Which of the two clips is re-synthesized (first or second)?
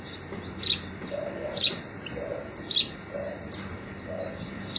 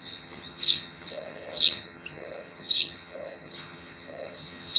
second